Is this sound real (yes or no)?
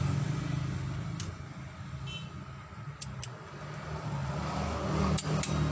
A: yes